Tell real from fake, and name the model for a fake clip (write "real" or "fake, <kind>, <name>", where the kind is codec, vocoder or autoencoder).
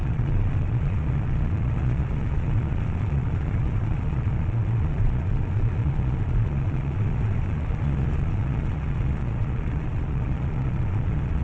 fake, vocoder, Vocos